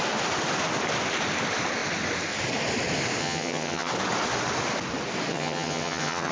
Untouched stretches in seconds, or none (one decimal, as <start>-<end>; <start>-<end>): 0.0-3.2; 3.9-5.3